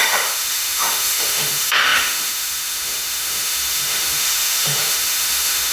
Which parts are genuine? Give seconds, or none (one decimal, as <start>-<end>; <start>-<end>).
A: none